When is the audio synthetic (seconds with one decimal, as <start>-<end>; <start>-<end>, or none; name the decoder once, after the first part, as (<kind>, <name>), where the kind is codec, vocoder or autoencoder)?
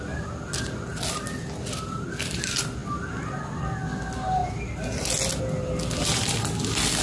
none